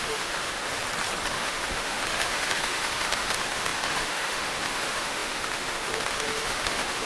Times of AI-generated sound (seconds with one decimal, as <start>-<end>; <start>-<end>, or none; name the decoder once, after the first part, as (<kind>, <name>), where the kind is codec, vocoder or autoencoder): 0.0-0.7 (autoencoder, DAC-VAE); 1.3-7.1